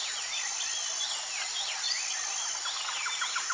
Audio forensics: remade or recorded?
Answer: recorded